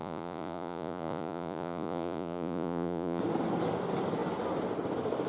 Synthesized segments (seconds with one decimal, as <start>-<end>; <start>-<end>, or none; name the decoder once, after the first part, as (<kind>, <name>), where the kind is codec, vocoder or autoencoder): 0.0-3.2 (vocoder, Vocos)